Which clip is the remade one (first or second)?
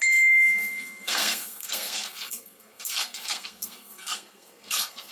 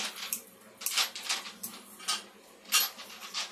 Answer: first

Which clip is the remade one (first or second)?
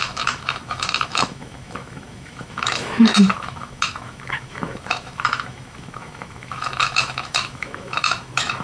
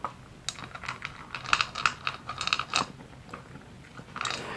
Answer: first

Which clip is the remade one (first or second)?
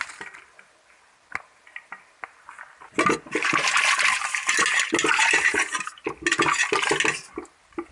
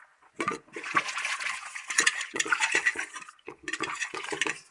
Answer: second